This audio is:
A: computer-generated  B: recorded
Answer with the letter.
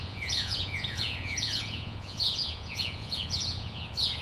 A